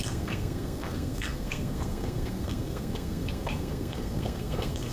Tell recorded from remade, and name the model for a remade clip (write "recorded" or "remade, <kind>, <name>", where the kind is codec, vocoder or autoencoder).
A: remade, codec, SNAC